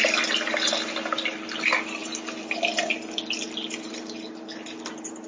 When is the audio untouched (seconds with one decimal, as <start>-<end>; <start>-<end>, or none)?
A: 0.0-5.3